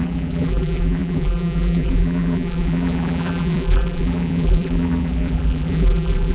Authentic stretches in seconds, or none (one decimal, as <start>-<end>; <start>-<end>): none